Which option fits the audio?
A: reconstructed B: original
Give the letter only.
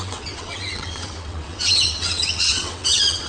A